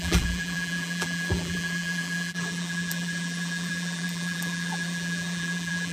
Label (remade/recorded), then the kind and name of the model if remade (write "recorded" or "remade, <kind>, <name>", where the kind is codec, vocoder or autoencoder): remade, vocoder, BigVGAN v2